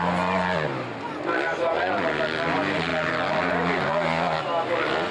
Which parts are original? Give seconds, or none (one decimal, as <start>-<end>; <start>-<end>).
0.0-5.1